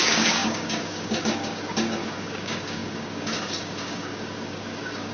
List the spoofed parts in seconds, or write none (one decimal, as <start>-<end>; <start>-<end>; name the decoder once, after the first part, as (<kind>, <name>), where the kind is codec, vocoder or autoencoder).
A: 0.0-5.1 (codec, DAC)